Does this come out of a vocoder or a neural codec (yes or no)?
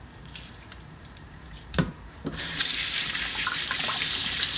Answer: yes